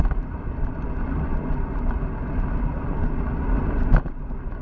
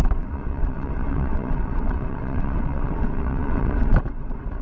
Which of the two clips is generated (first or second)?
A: second